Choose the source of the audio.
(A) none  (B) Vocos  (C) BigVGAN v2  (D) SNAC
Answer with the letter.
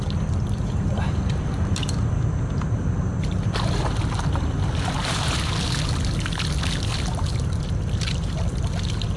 A